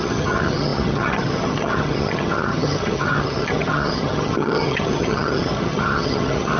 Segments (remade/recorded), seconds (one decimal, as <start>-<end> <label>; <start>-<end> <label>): 0.0-6.6 remade